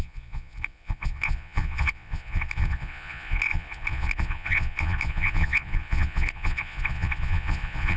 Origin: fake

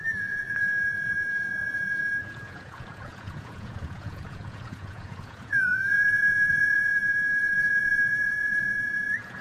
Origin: fake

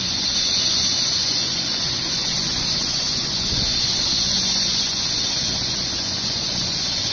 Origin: fake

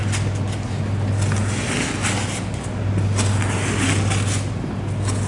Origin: real